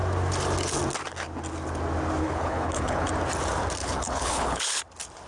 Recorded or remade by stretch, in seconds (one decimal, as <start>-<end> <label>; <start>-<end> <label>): 0.0-2.2 recorded; 2.2-3.1 remade; 3.1-3.8 recorded; 3.8-4.8 remade; 4.8-5.3 recorded